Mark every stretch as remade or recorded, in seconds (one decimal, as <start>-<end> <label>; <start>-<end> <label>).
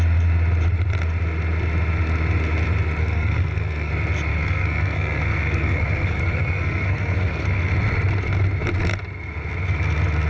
0.0-3.0 recorded; 3.0-3.9 remade; 3.9-4.3 recorded; 4.3-7.7 remade; 7.7-10.3 recorded